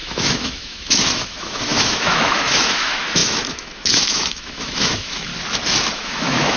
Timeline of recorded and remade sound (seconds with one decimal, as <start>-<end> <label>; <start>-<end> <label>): 0.0-5.3 remade; 5.3-5.9 recorded; 5.9-6.6 remade